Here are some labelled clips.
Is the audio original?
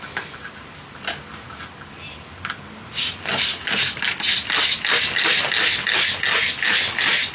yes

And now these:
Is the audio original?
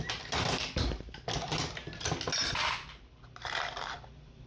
yes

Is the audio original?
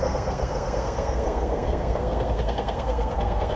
no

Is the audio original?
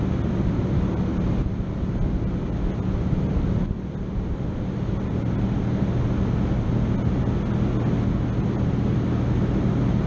yes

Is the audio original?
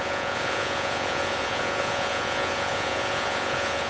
no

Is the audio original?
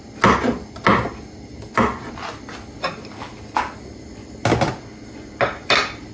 yes